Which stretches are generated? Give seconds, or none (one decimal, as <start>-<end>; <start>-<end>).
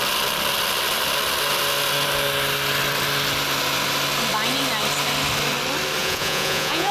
6.0-6.9